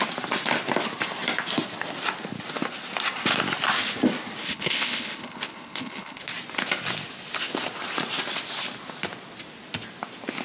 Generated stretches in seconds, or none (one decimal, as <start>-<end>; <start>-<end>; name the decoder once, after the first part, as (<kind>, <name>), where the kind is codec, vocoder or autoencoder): 4.4-6.2 (codec, HILCodec)